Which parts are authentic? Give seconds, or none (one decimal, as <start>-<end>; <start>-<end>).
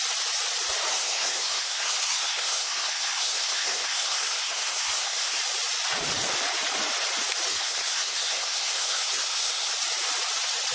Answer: 0.0-0.9; 5.4-7.5; 9.7-10.7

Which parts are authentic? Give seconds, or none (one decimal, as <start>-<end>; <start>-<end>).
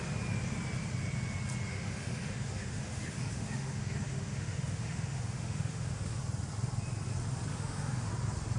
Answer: 0.0-1.7; 6.2-7.5; 8.1-8.6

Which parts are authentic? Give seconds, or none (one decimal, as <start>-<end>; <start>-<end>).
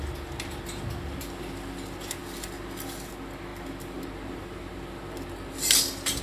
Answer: 0.0-6.2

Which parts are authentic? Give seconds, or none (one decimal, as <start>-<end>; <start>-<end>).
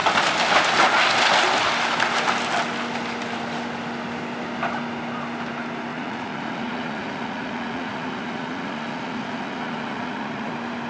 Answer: 0.0-5.9; 10.5-10.9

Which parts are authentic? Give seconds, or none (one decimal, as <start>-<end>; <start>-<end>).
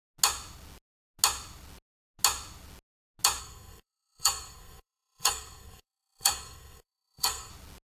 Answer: 0.0-3.4; 7.5-7.9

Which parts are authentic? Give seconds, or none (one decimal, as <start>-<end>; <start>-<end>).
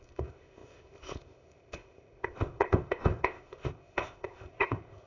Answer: none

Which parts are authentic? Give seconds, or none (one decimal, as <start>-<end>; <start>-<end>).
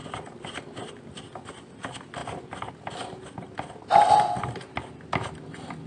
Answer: 0.0-5.9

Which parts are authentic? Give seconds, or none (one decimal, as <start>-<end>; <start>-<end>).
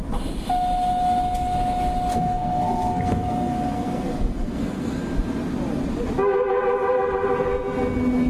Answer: 0.0-2.1; 5.0-8.3